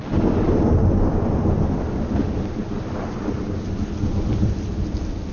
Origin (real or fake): real